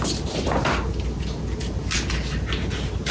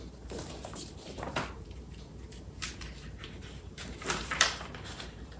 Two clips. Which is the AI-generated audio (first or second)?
second